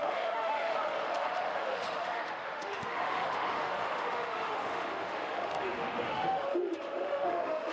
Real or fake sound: fake